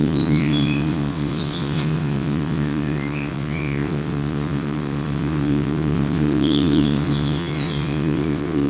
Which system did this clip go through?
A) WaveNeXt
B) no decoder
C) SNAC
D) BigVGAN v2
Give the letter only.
A